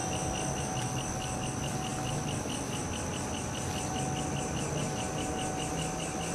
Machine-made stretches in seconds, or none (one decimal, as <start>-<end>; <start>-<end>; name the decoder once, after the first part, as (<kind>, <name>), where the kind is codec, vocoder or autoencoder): none